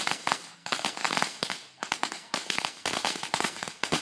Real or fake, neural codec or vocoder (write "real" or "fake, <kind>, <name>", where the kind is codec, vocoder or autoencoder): fake, codec, SNAC